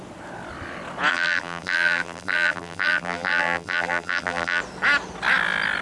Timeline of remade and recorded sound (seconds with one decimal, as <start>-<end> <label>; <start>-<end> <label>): 0.0-1.1 recorded; 1.1-4.6 remade; 4.6-5.8 recorded